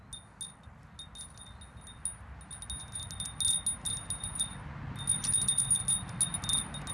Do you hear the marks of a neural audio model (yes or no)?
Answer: no